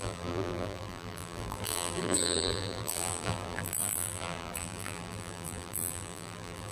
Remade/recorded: remade